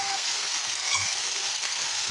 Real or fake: fake